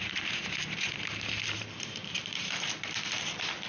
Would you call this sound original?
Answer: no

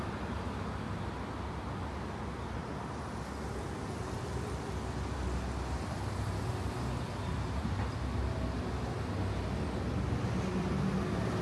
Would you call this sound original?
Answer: yes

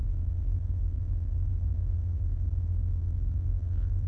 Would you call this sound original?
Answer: no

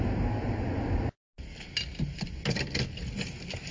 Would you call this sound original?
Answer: yes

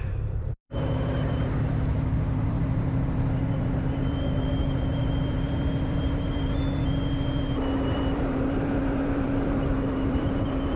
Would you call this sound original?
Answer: no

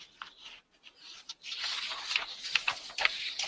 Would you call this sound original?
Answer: yes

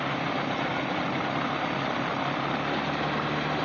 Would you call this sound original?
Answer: yes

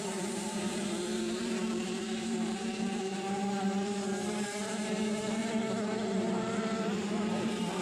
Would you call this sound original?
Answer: no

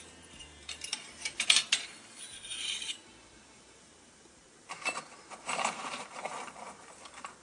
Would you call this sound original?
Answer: no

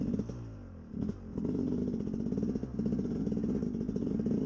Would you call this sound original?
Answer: yes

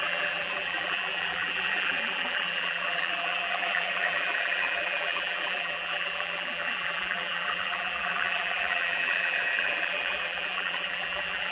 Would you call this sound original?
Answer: no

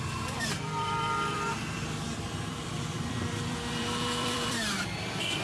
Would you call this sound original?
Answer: no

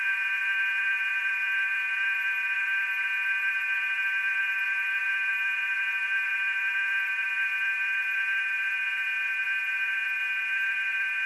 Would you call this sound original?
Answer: no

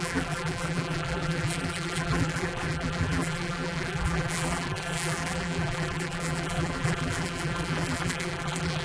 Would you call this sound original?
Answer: no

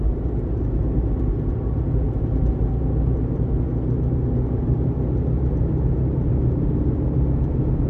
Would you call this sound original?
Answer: no